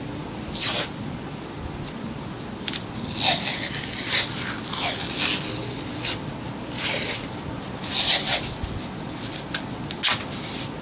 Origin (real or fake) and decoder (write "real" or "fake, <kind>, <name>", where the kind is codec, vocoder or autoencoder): real